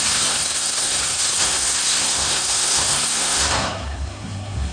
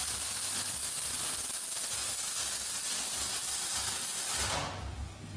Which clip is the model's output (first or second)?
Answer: first